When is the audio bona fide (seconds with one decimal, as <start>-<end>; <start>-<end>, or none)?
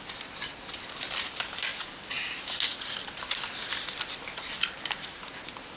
0.0-5.8